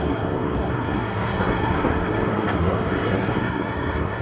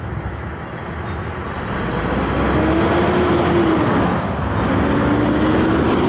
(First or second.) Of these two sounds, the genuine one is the second